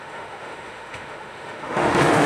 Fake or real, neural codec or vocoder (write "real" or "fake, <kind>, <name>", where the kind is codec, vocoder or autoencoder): fake, autoencoder, DAC-VAE